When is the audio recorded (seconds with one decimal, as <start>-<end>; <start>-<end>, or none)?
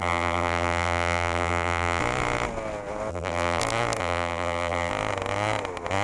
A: 2.0-3.1; 3.6-4.0; 4.9-6.0